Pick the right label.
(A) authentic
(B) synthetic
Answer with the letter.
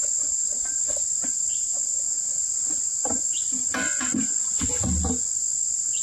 B